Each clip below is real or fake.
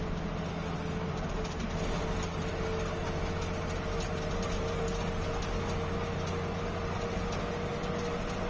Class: real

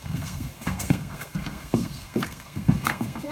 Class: fake